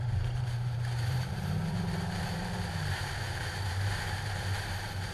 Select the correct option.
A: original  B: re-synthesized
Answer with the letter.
B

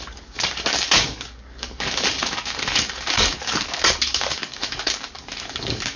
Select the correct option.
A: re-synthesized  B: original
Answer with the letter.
A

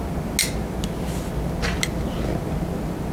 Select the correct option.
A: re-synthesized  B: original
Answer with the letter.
B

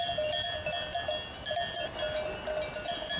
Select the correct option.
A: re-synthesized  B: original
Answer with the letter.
B